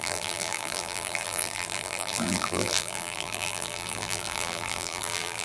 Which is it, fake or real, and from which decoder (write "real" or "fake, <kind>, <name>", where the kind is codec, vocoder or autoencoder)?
fake, vocoder, BigVGAN v2